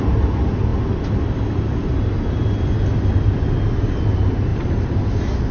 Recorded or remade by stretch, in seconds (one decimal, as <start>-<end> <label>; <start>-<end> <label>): 0.0-4.5 recorded; 4.5-5.0 remade; 5.0-5.5 recorded